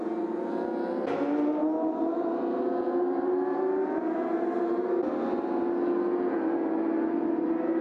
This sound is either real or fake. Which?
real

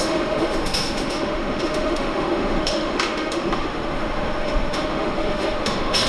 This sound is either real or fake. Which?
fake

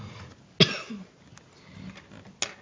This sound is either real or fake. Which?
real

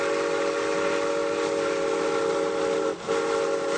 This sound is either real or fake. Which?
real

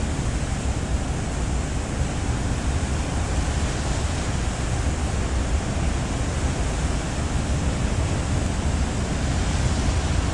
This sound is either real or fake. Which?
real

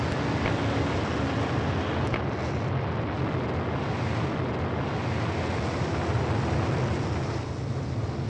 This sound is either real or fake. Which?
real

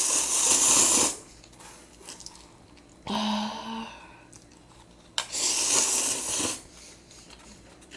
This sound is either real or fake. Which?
real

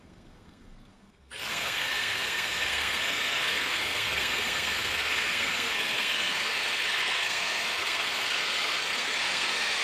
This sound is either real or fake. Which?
fake